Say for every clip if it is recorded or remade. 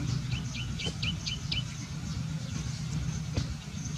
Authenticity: recorded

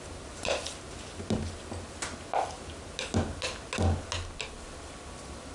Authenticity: recorded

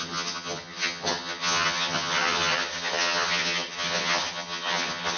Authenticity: remade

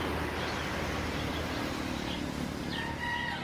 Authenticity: recorded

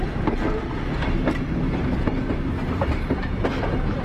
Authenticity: recorded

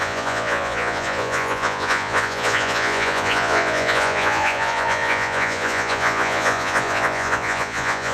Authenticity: remade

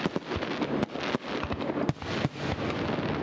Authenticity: recorded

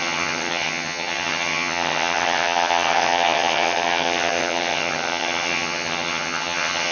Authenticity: remade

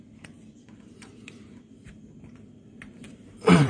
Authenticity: remade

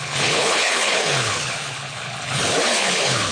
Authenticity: remade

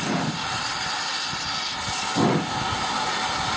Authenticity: recorded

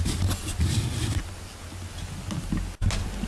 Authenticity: recorded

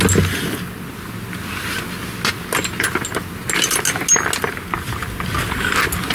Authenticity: recorded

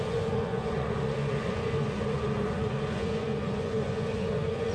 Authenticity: remade